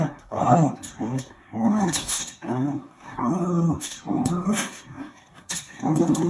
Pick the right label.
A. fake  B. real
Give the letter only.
A